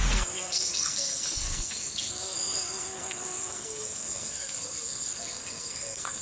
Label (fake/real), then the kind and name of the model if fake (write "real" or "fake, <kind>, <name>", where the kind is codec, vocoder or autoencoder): fake, codec, SNAC